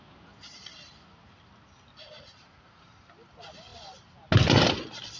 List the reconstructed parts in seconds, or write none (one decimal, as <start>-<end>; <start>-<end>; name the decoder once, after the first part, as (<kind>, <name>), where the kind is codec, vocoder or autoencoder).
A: none